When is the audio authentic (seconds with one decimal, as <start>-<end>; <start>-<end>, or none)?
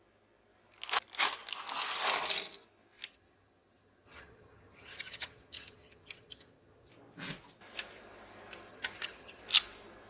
0.0-3.1; 6.9-8.7; 9.4-10.1